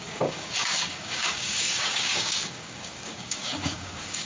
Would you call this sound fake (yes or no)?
yes